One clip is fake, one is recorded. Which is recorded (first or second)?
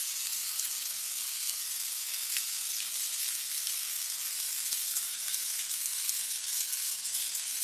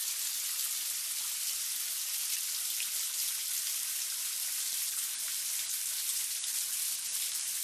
second